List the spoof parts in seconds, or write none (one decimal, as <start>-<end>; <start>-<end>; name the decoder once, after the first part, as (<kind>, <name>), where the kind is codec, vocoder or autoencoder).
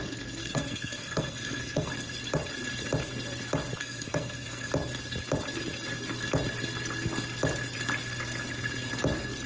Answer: 0.4-1.9 (codec, SNAC); 3.8-4.7